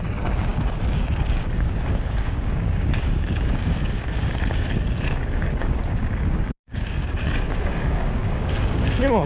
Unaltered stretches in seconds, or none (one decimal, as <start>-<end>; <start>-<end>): none